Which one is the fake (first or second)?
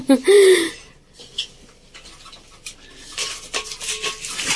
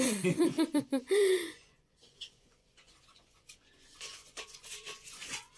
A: second